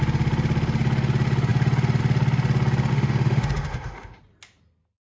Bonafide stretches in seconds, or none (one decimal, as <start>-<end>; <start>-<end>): 0.0-2.9; 4.2-5.2